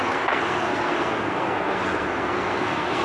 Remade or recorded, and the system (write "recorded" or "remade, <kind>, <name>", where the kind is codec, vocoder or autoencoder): remade, codec, SNAC